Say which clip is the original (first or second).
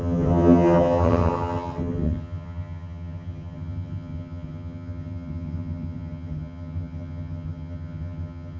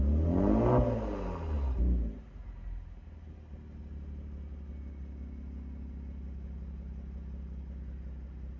second